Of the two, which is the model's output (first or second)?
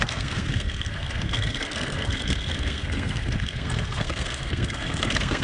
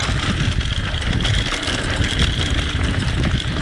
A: first